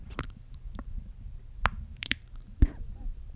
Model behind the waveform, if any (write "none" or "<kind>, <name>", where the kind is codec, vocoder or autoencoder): vocoder, BigVGAN v2